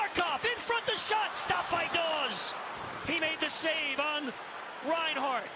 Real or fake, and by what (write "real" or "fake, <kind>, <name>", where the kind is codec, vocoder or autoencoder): real